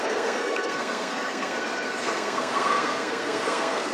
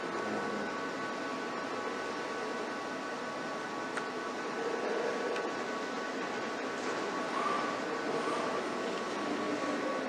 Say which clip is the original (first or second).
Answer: second